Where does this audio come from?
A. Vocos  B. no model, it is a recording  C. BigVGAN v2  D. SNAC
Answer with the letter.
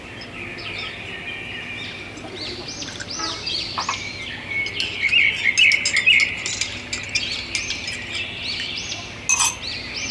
B